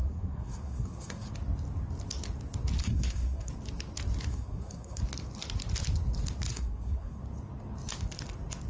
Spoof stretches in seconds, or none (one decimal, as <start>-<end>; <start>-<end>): 0.0-1.3; 2.8-3.5; 4.3-5.0; 6.5-7.2